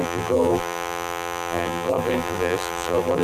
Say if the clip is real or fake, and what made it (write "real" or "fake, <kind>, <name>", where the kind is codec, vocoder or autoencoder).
fake, vocoder, BigVGAN v2